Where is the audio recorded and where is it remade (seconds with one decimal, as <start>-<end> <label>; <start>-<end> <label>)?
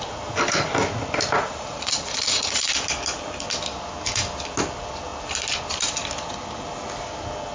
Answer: 0.0-1.4 recorded; 1.4-2.7 remade; 2.7-7.5 recorded